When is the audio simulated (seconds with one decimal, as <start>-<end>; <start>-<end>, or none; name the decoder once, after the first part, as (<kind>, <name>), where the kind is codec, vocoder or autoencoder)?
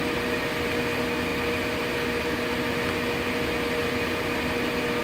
1.3-2.2 (vocoder, BigVGAN v2)